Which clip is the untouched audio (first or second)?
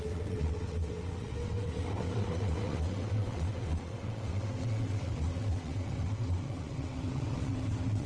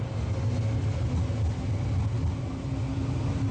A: second